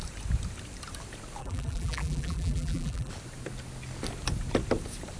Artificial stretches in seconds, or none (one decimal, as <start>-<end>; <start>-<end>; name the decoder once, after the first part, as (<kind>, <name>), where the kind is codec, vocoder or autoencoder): 1.4-3.1 (vocoder, BigVGAN v2)